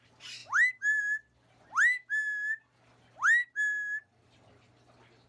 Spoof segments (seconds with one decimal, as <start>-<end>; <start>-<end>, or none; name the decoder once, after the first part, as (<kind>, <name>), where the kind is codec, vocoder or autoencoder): none